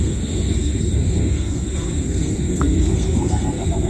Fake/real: fake